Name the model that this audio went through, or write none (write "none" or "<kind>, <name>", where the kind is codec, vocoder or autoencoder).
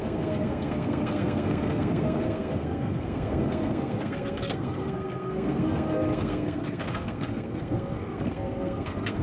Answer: codec, SNAC